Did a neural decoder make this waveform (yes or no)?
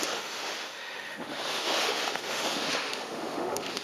yes